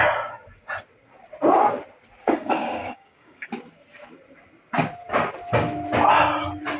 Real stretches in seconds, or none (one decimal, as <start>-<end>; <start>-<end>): 0.0-2.2; 3.5-6.8